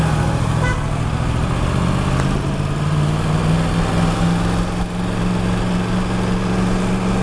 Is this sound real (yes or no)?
yes